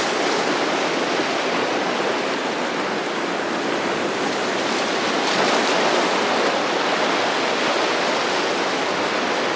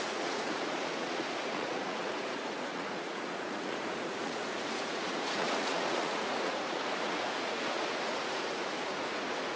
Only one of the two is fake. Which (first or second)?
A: second